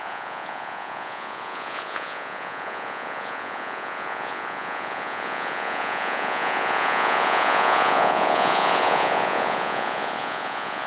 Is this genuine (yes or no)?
no